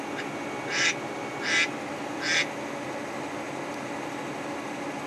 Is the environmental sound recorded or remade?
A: recorded